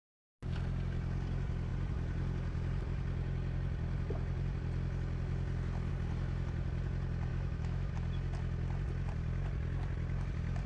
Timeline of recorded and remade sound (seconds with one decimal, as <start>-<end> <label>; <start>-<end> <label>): 0.0-7.3 recorded; 7.3-7.9 remade; 7.9-10.7 recorded